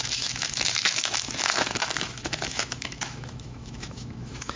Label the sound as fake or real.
fake